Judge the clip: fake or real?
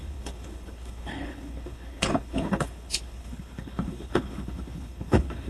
fake